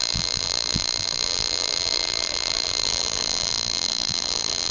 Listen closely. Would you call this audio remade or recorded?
remade